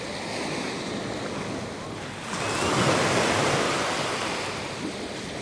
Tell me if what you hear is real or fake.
real